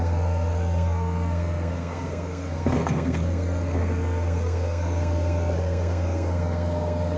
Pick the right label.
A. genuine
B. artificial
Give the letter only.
B